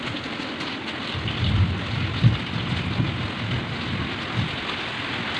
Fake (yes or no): no